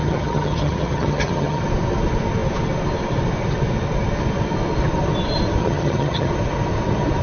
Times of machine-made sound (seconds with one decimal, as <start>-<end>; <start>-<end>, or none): 0.0-1.6; 5.6-6.3

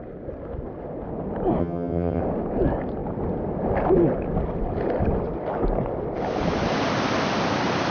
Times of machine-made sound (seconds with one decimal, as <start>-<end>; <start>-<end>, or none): 1.6-2.2

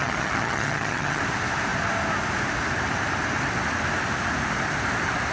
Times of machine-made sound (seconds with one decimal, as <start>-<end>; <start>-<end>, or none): 0.0-1.2